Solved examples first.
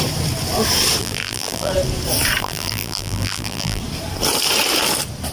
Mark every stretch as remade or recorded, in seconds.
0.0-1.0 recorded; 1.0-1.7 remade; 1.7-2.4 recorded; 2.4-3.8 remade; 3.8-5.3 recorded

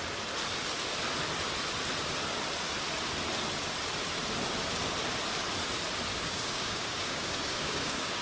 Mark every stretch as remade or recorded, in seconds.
0.0-6.1 recorded; 6.1-8.2 remade

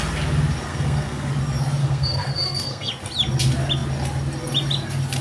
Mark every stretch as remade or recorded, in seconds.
0.0-0.7 recorded; 0.7-1.3 remade; 1.3-1.8 recorded; 1.8-2.9 remade; 2.9-5.2 recorded

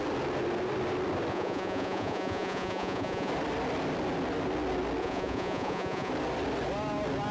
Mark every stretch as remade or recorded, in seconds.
0.0-1.3 recorded; 1.3-3.3 remade; 3.3-5.0 recorded; 5.0-6.1 remade; 6.1-7.3 recorded

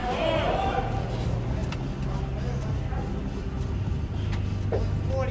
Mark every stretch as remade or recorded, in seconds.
0.0-5.3 recorded

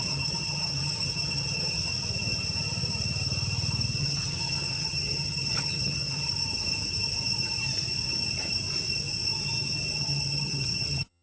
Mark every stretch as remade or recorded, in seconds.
0.0-1.9 remade; 1.9-4.0 recorded; 4.0-6.3 remade; 6.3-10.0 recorded; 10.0-11.2 remade

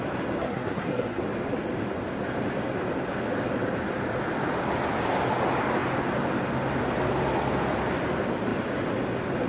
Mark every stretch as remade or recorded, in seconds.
0.0-0.4 recorded; 0.4-1.2 remade; 1.2-9.5 recorded